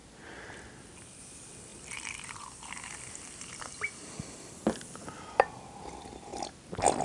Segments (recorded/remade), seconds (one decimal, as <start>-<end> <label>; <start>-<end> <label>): 0.0-1.7 recorded; 1.7-3.6 remade; 3.6-6.3 recorded; 6.3-7.0 remade

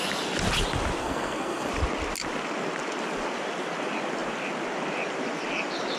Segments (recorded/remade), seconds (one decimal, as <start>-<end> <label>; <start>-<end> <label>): 0.0-1.0 recorded; 1.0-1.7 remade; 1.7-6.0 recorded

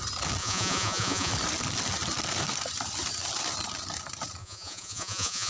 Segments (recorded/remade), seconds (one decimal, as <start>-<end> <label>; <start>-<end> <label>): 0.0-0.4 recorded; 0.4-1.3 remade; 1.3-4.4 recorded; 4.4-5.5 remade

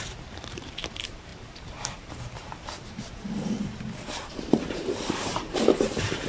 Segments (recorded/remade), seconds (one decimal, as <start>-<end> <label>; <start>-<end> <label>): 0.0-6.3 remade